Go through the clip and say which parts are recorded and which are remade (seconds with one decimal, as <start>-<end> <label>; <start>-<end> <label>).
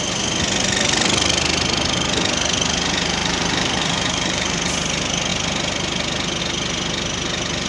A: 0.0-3.2 recorded; 3.2-4.6 remade; 4.6-7.7 recorded